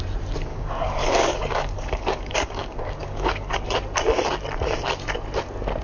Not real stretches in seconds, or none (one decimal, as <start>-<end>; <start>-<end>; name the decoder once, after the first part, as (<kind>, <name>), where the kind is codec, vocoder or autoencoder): 0.5-3.6 (codec, DAC)